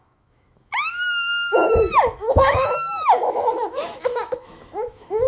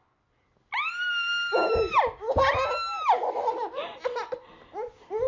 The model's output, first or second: first